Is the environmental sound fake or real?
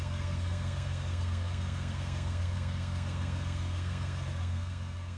fake